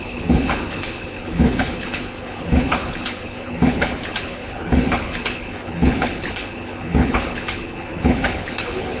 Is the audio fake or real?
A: fake